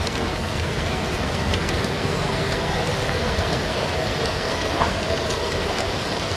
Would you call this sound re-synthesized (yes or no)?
yes